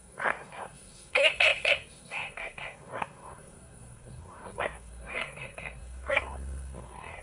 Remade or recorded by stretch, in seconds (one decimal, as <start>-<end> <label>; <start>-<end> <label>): 0.0-7.2 remade